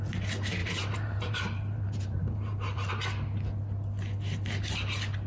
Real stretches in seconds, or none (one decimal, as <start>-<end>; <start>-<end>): 0.0-0.6; 2.9-5.3